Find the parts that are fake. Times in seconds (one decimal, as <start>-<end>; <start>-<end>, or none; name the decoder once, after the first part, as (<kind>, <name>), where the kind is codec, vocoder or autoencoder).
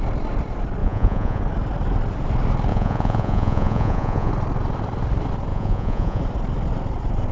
0.8-1.4 (vocoder, Vocos); 2.7-4.3; 5.5-6.2